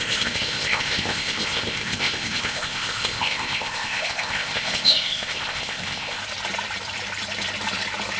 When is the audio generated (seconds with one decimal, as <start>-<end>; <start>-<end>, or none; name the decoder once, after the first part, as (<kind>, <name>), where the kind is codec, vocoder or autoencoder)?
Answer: 0.0-6.2 (codec, ZipCodec)